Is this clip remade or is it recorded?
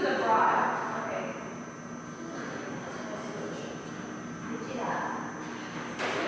recorded